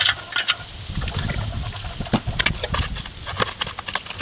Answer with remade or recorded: recorded